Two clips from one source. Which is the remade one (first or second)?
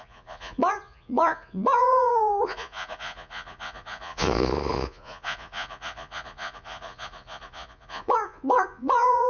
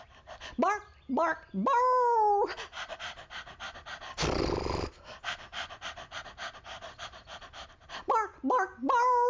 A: first